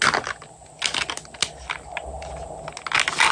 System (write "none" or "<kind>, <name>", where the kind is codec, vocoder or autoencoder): none